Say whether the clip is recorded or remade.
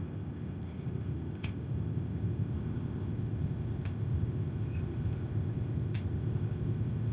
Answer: remade